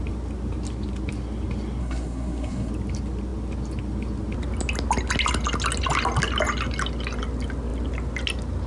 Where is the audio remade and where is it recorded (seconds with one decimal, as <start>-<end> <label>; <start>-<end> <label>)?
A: 0.0-1.8 recorded; 1.8-2.7 remade; 2.7-8.7 recorded